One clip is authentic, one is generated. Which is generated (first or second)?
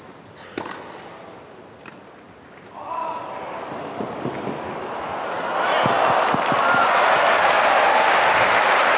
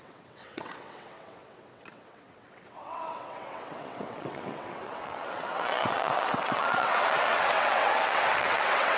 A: second